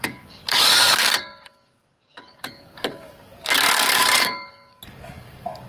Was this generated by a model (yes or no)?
yes